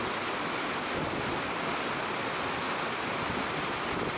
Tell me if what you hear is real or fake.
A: real